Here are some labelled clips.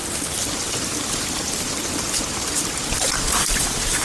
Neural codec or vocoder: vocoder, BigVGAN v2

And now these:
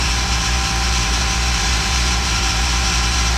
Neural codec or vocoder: vocoder, BigVGAN v2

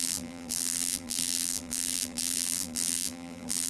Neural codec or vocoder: vocoder, BigVGAN v2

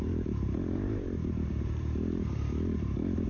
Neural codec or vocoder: vocoder, BigVGAN v2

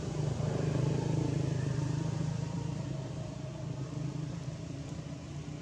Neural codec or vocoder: vocoder, BigVGAN v2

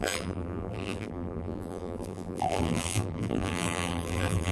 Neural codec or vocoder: vocoder, BigVGAN v2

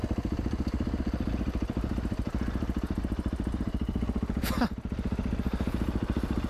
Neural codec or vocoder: none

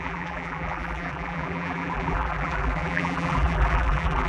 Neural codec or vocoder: vocoder, BigVGAN v2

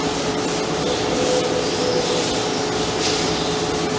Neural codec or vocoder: none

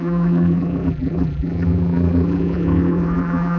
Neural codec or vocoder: vocoder, BigVGAN v2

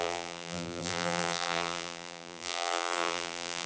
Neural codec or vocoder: vocoder, BigVGAN v2